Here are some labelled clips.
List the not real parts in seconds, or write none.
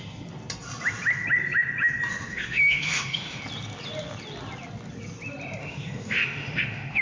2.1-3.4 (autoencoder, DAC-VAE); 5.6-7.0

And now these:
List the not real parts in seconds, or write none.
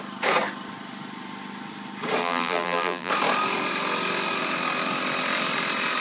2.2-3.1 (vocoder, BigVGAN v2)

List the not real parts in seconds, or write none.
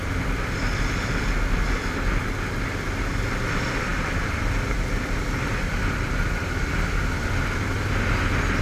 none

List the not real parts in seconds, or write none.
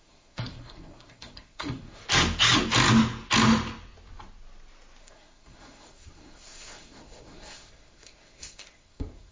0.0-2.0 (codec, SNAC); 5.0-9.3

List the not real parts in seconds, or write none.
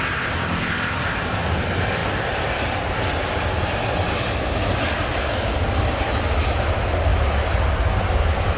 none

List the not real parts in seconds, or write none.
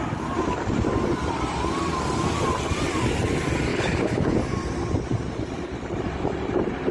3.7-4.4 (codec, HILCodec)